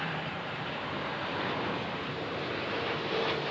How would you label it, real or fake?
fake